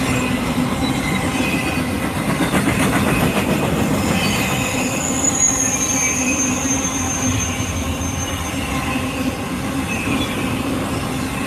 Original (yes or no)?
yes